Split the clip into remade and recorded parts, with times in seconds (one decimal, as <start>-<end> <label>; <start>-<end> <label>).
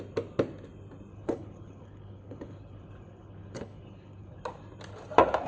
0.0-1.1 recorded; 1.1-4.4 remade; 4.4-5.5 recorded